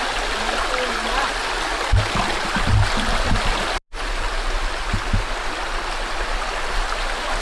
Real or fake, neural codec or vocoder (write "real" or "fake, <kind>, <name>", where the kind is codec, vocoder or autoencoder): real